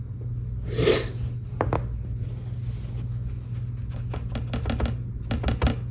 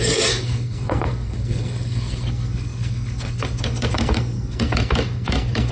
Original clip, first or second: first